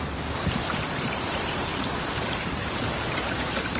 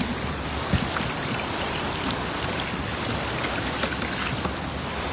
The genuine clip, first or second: second